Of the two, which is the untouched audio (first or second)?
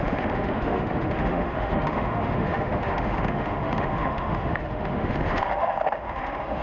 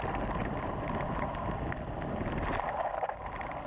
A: second